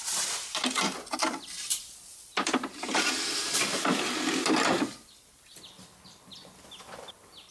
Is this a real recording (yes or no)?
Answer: no